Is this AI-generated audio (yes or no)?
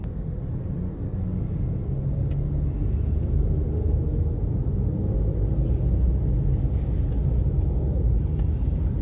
no